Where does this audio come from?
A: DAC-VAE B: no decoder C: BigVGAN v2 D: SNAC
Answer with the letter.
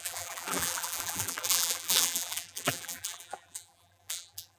C